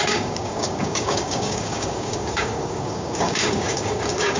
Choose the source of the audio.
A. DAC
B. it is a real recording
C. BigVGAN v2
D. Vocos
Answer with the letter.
A